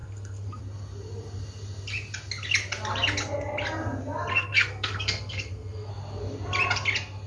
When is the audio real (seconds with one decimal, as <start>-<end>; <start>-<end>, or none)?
0.6-4.3; 5.9-7.3